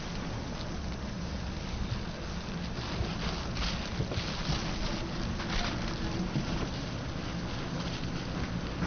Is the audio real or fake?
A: real